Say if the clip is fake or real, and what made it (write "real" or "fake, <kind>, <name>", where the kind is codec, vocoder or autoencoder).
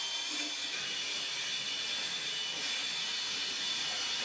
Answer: fake, vocoder, BigVGAN v2